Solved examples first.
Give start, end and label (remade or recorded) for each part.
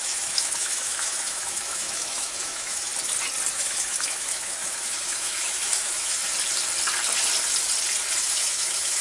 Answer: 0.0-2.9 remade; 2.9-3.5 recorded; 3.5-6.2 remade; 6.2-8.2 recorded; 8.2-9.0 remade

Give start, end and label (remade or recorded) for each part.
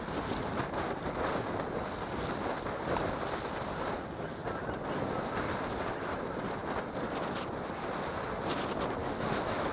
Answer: 0.0-9.0 recorded; 9.0-9.7 remade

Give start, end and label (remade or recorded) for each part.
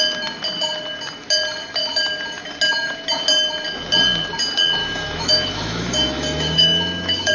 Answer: 0.0-4.8 recorded; 4.8-7.3 remade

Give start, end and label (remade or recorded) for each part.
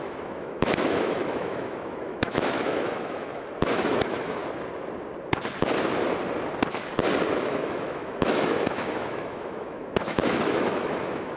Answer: 0.0-4.4 remade; 4.4-7.3 recorded; 7.3-11.4 remade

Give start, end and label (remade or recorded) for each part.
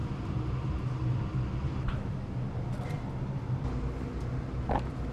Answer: 0.0-5.1 recorded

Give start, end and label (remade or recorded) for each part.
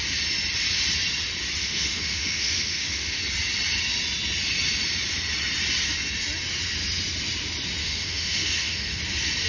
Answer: 0.0-1.6 recorded; 1.6-3.2 remade; 3.2-7.8 recorded; 7.8-9.0 remade; 9.0-9.5 recorded